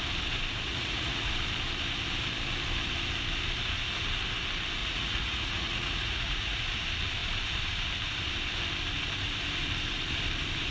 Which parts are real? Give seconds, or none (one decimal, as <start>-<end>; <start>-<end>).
0.0-0.7; 1.3-4.8; 6.6-10.7